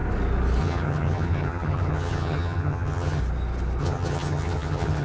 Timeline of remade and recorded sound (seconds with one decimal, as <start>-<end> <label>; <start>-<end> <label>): 0.0-0.6 recorded; 0.6-3.2 remade; 3.2-3.8 recorded; 3.8-5.0 remade